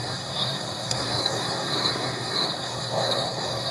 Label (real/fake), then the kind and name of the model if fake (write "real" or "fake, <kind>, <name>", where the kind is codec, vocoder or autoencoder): fake, codec, SNAC